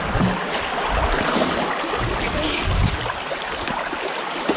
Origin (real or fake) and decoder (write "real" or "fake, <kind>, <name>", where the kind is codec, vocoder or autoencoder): real